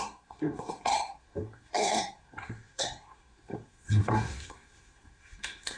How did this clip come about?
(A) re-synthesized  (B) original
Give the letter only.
A